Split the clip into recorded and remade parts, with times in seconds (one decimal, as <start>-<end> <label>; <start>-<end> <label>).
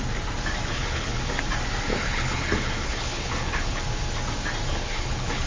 0.0-0.7 recorded; 0.7-1.3 remade; 1.3-1.9 recorded; 1.9-3.8 remade; 3.8-4.7 recorded; 4.7-5.5 remade